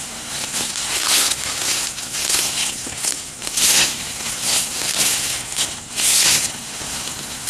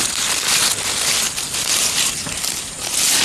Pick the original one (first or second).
second